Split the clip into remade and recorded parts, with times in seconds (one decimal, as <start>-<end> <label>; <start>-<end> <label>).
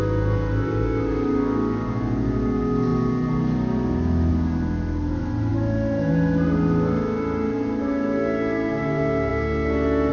0.0-10.1 recorded